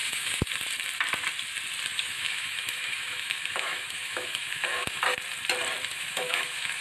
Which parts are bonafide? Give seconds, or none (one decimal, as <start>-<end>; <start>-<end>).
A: 0.5-1.9; 5.0-5.9